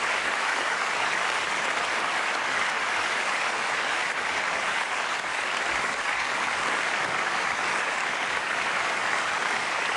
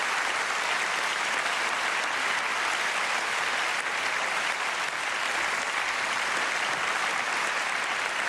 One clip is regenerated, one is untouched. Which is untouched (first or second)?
second